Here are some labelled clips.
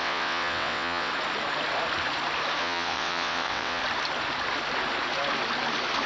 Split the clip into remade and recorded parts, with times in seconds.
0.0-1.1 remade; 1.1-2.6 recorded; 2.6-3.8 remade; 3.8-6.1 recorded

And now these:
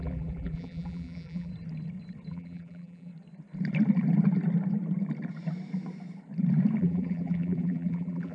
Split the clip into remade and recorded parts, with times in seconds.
0.0-1.5 remade; 1.5-2.3 recorded; 2.3-3.1 remade; 3.1-6.8 recorded; 6.8-8.3 remade

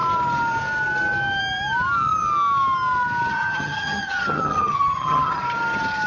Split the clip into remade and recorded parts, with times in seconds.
0.0-3.3 recorded; 3.3-5.4 remade; 5.4-6.1 recorded

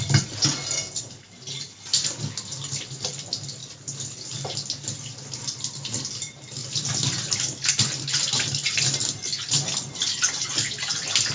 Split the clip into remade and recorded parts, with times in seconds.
0.0-11.3 recorded